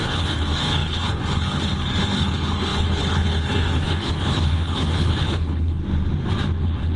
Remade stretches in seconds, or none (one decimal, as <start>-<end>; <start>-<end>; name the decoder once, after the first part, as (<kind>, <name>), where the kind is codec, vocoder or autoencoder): 0.0-5.8 (codec, HILCodec); 6.6-7.0